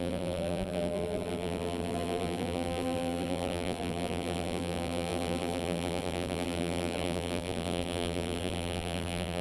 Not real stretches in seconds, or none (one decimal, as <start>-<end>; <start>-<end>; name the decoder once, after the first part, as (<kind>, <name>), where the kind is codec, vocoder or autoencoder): 0.0-9.4 (vocoder, BigVGAN v2)